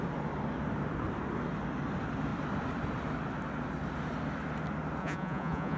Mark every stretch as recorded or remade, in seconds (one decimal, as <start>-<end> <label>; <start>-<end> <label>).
0.0-5.0 recorded; 5.0-5.8 remade